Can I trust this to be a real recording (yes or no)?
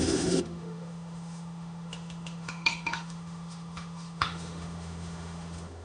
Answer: no